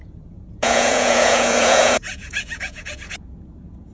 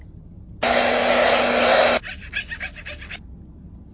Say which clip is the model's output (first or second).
first